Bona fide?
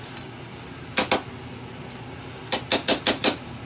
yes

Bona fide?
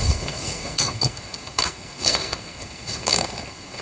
no